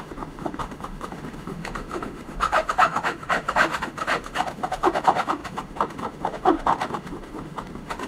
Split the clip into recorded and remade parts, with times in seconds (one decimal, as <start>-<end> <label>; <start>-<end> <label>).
0.0-8.1 remade